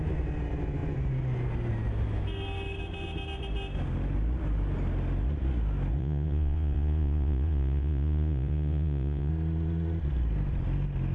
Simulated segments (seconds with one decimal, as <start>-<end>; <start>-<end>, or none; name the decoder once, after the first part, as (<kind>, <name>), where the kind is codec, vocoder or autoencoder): 6.0-9.3 (vocoder, Vocos)